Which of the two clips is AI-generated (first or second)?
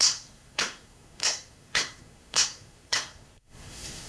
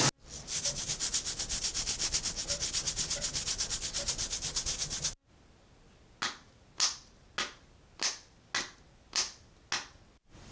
first